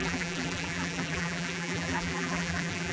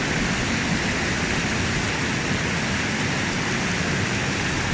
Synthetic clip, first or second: first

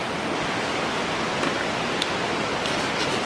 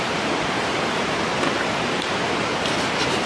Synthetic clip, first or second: second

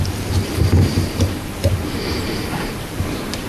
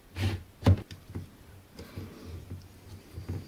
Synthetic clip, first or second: first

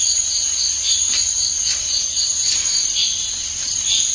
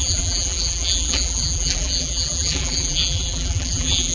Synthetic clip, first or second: second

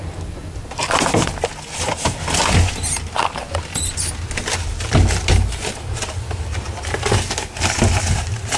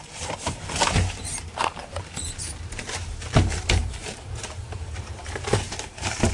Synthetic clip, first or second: second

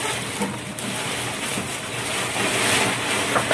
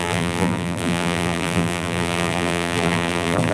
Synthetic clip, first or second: second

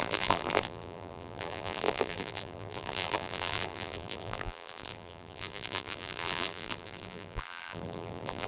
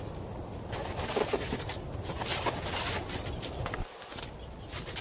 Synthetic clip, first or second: first